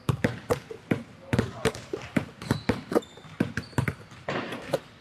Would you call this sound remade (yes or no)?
yes